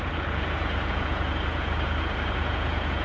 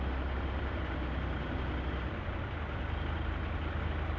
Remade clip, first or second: first